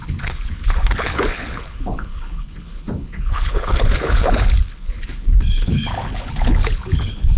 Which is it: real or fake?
fake